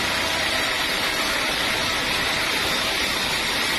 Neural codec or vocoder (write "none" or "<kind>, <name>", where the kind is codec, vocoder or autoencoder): vocoder, BigVGAN v2